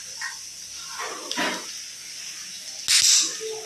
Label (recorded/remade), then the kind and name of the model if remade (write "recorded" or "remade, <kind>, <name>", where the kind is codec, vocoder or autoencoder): recorded